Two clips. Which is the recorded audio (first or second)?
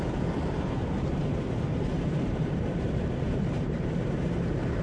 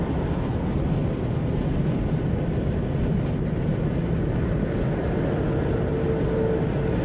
second